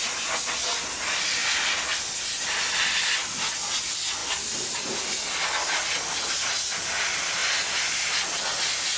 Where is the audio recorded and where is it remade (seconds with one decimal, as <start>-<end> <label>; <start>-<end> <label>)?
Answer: 0.0-4.2 recorded; 4.2-5.0 remade; 5.0-9.0 recorded